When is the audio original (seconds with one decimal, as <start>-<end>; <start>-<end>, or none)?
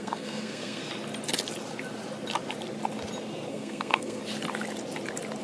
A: 0.8-3.5; 4.2-5.4